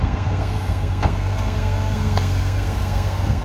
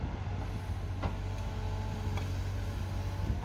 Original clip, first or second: second